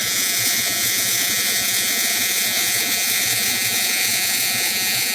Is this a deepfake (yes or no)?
yes